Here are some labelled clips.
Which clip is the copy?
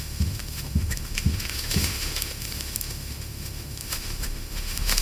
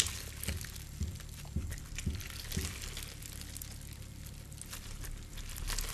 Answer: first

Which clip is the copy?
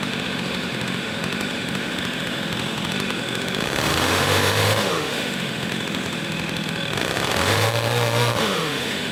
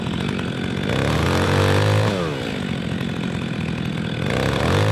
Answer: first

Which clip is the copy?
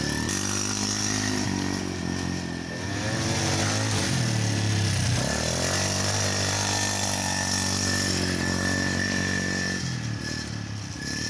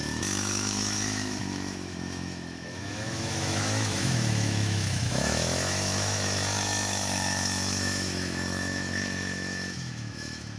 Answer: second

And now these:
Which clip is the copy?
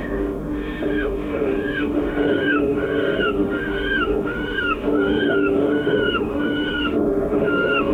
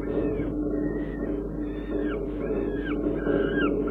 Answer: first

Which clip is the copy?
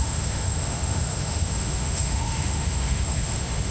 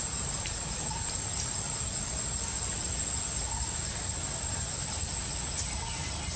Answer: first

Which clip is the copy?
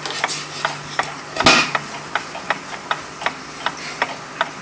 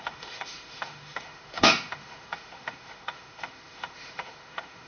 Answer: second